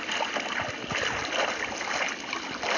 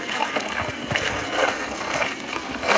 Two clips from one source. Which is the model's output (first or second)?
second